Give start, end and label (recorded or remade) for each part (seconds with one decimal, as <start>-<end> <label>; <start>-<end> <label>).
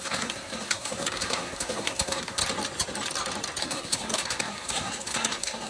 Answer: 0.0-2.4 remade; 2.4-3.6 recorded; 3.6-5.7 remade